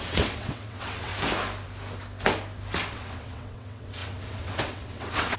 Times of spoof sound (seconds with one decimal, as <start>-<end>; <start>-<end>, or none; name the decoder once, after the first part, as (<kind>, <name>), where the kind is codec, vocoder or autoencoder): 0.0-1.1 (vocoder, WaveNeXt); 2.9-5.4